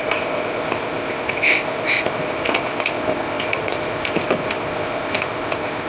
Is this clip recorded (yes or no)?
no